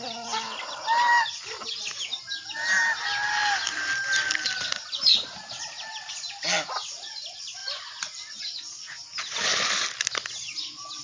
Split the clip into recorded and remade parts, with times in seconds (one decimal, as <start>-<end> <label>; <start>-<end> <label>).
0.0-11.0 recorded